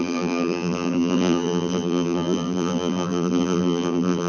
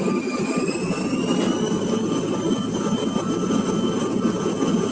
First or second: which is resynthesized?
first